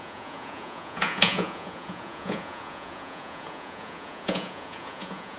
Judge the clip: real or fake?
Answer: fake